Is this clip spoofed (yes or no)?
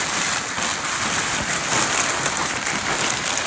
no